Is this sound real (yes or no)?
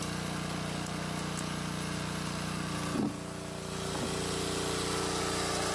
yes